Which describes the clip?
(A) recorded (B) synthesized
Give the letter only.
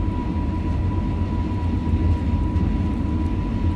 A